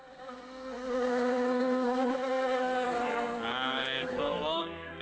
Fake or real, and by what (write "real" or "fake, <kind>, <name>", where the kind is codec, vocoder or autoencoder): fake, codec, SNAC